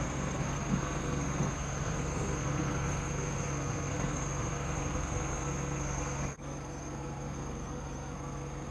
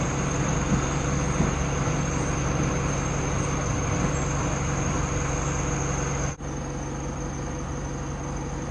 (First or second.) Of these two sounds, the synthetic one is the first